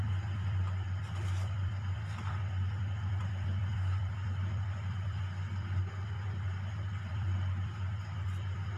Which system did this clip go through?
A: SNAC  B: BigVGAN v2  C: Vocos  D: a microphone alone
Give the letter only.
B